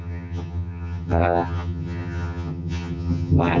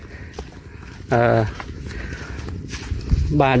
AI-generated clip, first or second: first